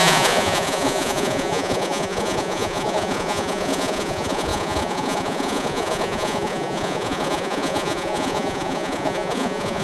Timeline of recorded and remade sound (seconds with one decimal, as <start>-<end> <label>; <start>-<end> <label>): 0.0-9.8 remade